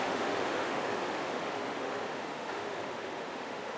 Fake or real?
fake